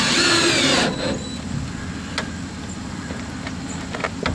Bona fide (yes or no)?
yes